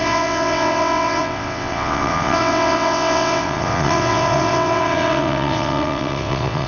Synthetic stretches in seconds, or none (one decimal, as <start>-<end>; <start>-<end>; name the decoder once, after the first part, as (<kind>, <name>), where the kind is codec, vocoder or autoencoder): 0.0-6.7 (vocoder, WaveNeXt)